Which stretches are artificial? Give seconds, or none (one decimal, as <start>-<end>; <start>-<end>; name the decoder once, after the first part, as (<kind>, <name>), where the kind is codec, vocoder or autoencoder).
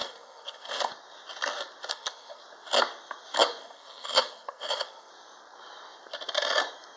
0.0-0.9 (codec, SNAC); 1.9-2.4; 3.6-5.1